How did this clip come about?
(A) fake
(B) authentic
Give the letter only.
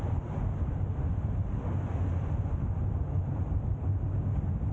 B